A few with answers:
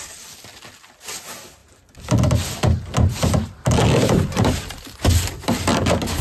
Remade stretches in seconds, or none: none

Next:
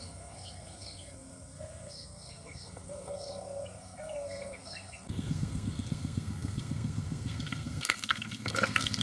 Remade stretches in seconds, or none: 0.0-9.0 (codec, SNAC)

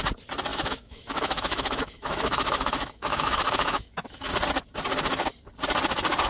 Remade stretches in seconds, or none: 0.5-4.3 (autoencoder, DAC-VAE)